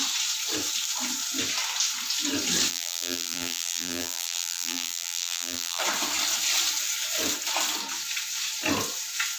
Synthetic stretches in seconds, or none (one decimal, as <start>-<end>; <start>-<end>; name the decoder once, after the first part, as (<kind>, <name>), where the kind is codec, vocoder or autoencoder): 2.7-5.8 (vocoder, BigVGAN v2)